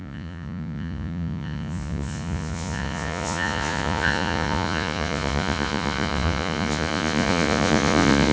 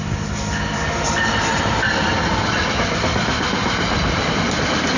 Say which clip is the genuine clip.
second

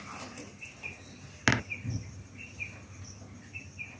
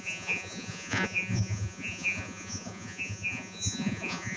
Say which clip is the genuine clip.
first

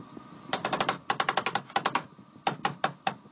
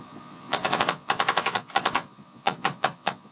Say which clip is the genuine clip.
first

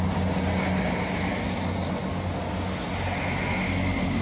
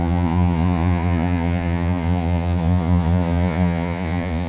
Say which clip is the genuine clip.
first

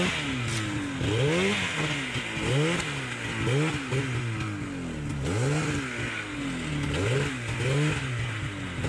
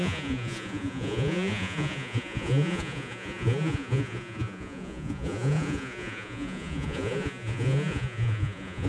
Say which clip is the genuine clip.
first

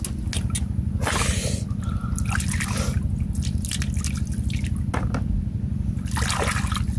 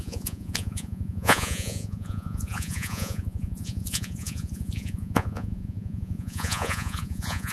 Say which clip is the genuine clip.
first